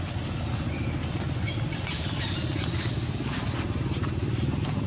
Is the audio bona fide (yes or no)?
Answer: yes